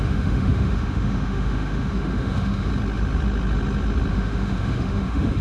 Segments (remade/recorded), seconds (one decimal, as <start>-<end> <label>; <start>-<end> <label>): 0.0-2.7 remade; 2.7-4.1 recorded; 4.1-5.4 remade

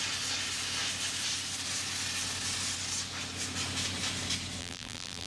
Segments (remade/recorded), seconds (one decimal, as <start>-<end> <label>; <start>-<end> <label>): 0.0-4.6 recorded; 4.6-5.3 remade

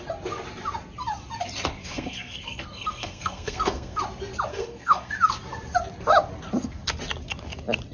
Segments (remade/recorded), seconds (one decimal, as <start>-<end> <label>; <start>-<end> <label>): 0.0-1.8 recorded; 1.8-4.0 remade; 4.0-4.5 recorded; 4.5-5.1 remade; 5.1-7.9 recorded

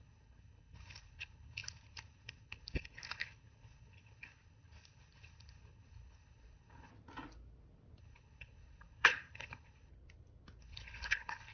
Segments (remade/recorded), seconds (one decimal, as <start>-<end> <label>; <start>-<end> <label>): 0.0-6.9 remade; 6.9-8.0 recorded; 8.0-9.9 remade; 9.9-10.6 recorded; 10.6-11.5 remade

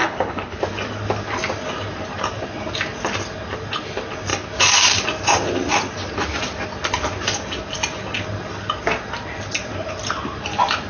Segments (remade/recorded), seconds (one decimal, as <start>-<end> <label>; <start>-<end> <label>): 0.0-0.6 remade; 0.6-10.9 recorded

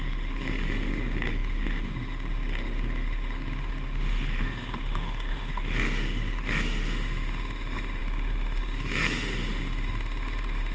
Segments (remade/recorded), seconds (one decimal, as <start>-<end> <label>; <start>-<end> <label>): 0.0-10.7 remade